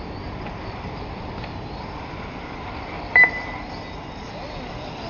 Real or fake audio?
real